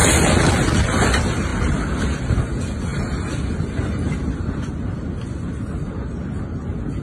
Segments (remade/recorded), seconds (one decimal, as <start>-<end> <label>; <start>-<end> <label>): 0.0-7.0 recorded